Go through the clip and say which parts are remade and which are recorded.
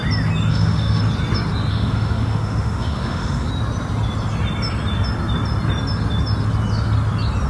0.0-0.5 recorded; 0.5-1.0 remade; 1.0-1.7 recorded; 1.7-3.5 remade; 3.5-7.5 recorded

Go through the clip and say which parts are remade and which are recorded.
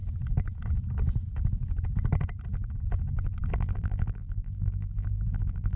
0.0-3.5 recorded; 3.5-5.8 remade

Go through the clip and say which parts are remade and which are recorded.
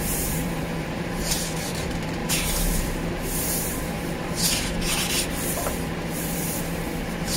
0.0-7.4 remade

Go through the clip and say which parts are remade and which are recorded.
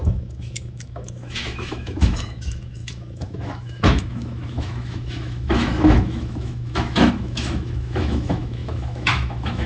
0.0-9.7 remade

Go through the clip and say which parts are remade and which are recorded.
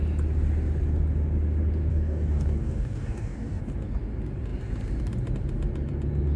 0.0-1.9 recorded; 1.9-3.6 remade; 3.6-6.4 recorded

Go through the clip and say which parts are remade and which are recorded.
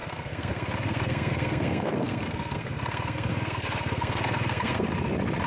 0.0-4.9 remade; 4.9-5.5 recorded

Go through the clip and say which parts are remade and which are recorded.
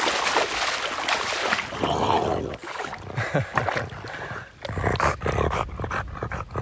0.0-6.6 recorded